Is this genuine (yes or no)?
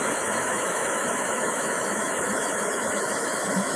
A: no